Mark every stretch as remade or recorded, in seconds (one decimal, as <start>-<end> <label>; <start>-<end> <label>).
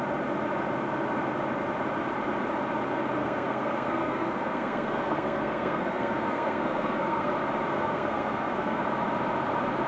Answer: 0.0-3.2 recorded; 3.2-7.3 remade; 7.3-7.7 recorded; 7.7-8.8 remade; 8.8-9.9 recorded